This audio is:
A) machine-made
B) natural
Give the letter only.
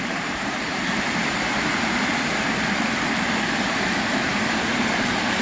A